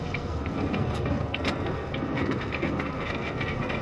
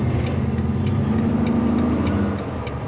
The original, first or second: second